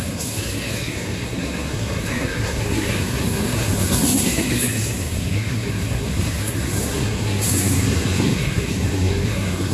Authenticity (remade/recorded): remade